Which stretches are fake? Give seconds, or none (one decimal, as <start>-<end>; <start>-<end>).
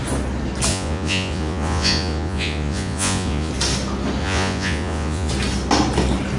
0.7-3.5; 4.2-5.3